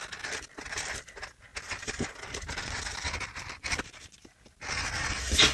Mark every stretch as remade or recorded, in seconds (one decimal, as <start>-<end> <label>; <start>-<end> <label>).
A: 0.0-5.5 recorded